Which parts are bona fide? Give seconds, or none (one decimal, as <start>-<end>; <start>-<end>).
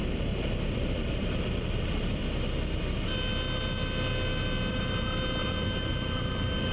2.2-4.7